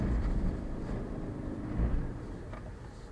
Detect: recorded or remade remade